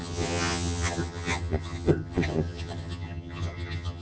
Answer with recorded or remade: remade